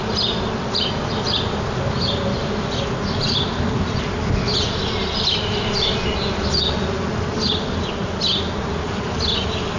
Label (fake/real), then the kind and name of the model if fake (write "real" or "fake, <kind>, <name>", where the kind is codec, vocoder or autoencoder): real